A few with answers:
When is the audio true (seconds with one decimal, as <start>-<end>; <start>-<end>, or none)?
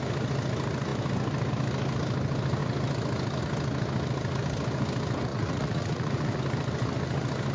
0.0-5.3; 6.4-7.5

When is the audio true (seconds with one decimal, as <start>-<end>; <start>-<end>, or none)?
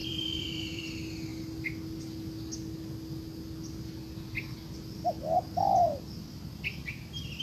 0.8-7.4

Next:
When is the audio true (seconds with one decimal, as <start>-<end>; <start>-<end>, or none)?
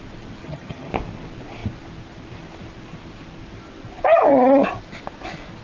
0.0-0.4; 0.9-5.6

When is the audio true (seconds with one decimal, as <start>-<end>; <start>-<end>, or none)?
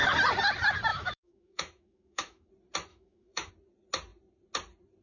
0.0-0.9; 2.5-2.9; 3.5-5.0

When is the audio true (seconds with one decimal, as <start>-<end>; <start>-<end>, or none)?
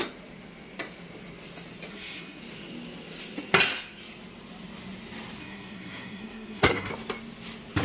0.0-1.9; 2.4-5.4; 6.9-7.8